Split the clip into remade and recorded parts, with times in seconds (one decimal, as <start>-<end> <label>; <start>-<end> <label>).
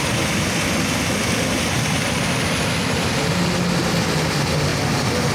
0.0-5.3 recorded